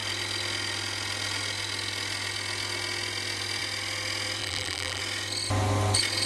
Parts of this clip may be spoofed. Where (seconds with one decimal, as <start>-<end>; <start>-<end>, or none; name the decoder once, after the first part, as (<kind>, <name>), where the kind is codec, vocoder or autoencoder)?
4.4-5.0 (vocoder, BigVGAN v2)